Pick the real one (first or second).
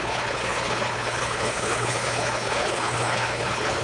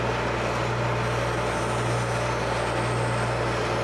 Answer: second